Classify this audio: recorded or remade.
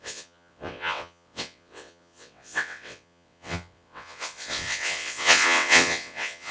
remade